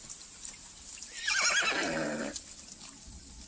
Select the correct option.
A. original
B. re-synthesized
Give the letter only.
A